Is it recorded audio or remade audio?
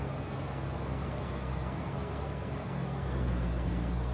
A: remade